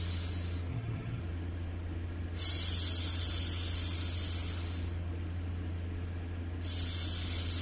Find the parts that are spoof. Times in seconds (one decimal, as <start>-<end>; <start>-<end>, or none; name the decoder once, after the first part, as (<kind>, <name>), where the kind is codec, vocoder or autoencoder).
0.7-1.2 (vocoder, HiFi-GAN)